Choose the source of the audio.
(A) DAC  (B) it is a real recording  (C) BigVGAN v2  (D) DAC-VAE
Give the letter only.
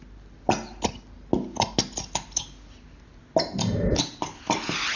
B